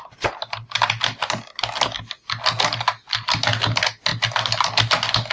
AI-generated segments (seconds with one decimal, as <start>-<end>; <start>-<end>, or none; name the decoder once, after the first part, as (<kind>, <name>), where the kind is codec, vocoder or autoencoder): none